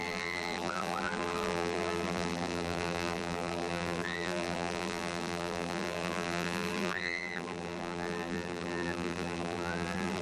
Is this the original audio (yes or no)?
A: no